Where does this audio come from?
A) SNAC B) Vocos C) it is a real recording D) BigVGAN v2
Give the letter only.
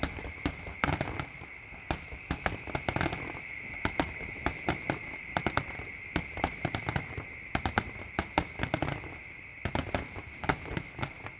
C